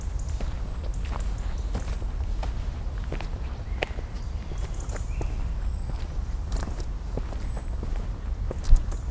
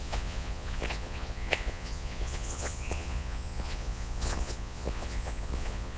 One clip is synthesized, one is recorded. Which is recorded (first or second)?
first